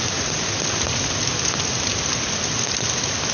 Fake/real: real